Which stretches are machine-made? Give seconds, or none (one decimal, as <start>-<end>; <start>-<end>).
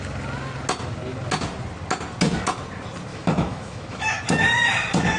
3.1-4.2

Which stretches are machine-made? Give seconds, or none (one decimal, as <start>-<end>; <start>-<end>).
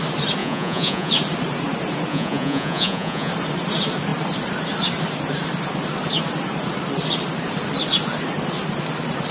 0.4-1.1; 2.1-3.3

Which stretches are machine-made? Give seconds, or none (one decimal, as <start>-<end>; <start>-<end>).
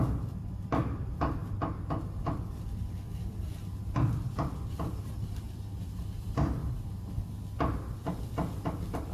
0.0-1.4; 2.3-9.1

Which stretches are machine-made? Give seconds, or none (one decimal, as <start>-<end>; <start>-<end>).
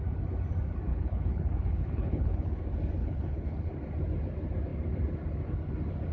0.9-2.6; 3.0-3.7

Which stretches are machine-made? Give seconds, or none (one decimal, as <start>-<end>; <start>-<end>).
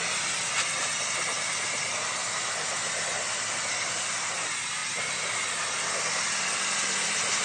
none